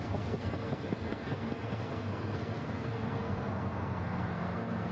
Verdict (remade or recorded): remade